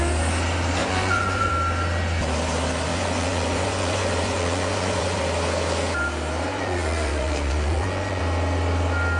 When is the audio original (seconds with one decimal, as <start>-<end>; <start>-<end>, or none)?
0.0-0.8; 1.5-2.9; 5.2-6.5; 8.2-9.2